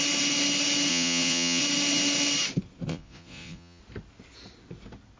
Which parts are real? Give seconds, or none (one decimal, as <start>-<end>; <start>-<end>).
0.0-0.9; 1.6-2.9; 3.8-5.2